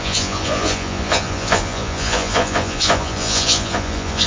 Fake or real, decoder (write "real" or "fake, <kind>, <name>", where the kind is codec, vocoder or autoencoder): fake, vocoder, Vocos